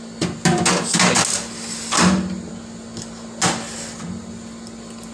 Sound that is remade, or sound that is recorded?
recorded